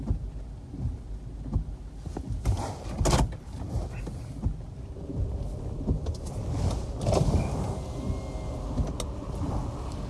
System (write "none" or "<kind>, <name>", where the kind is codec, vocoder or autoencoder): none